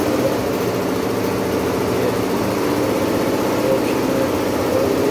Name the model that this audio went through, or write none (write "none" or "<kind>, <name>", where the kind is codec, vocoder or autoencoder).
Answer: none